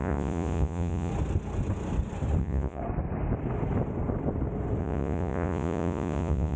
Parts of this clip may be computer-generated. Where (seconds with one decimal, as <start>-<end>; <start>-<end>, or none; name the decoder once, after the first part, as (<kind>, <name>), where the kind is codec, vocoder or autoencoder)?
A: 0.0-1.1 (vocoder, Vocos); 2.4-2.8; 4.8-6.6